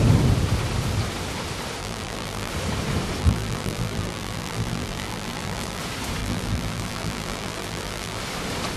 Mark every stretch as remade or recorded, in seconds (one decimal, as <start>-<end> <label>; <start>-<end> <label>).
0.0-1.8 recorded; 1.8-2.5 remade; 2.5-3.2 recorded; 3.2-5.8 remade; 5.8-6.2 recorded; 6.2-8.2 remade; 8.2-8.8 recorded

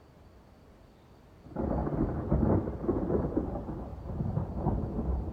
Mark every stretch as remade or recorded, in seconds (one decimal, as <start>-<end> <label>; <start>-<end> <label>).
0.0-5.3 recorded